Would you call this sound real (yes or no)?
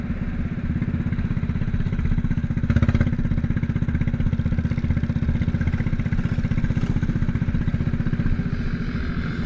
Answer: yes